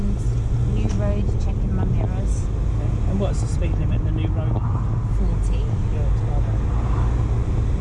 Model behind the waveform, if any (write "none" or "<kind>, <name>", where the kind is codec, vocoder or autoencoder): none